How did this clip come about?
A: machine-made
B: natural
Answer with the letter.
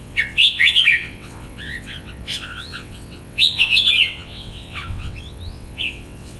A